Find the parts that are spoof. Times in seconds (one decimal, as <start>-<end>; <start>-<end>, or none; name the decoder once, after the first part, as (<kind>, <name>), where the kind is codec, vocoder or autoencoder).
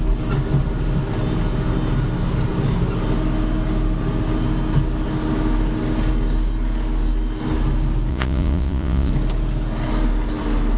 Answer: 8.1-9.1 (vocoder, Vocos)